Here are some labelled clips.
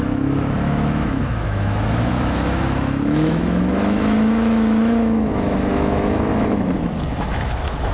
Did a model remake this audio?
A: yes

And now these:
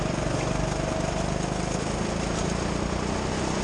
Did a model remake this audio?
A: no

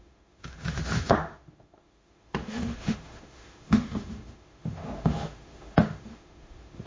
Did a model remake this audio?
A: yes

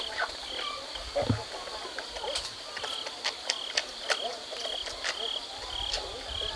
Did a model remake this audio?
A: no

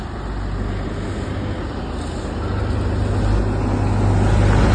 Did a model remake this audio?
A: no